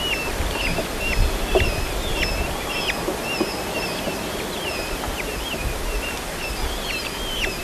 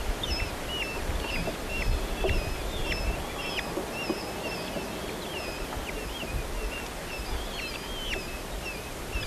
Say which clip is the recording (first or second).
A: second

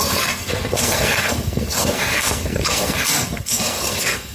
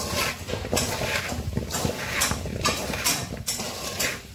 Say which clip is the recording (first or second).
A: second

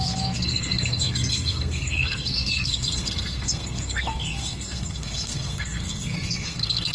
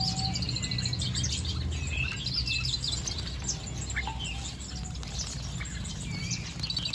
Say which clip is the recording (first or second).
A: second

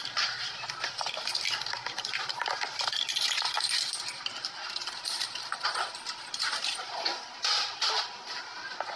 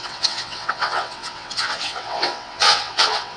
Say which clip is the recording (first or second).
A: first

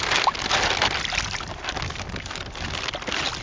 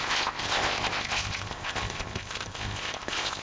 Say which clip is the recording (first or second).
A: first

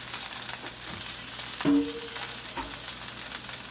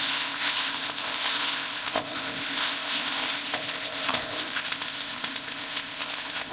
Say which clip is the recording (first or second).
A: first